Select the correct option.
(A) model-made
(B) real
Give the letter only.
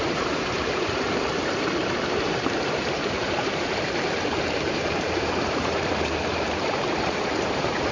A